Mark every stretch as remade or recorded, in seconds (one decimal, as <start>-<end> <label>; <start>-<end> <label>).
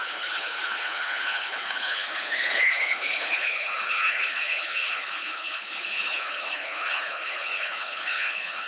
0.0-8.7 remade